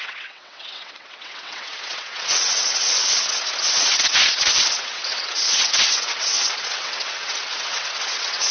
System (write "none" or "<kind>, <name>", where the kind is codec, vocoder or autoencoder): vocoder, WaveNeXt